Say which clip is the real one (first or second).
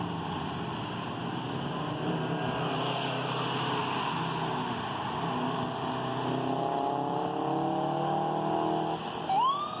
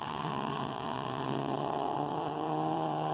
first